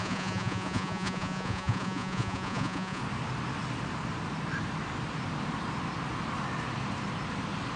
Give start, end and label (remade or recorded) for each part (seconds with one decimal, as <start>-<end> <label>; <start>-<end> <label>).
0.0-3.0 remade; 3.0-7.8 recorded